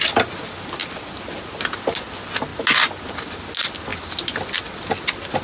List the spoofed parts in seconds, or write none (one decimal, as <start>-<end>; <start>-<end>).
none